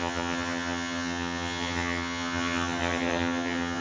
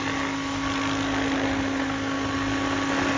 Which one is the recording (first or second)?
second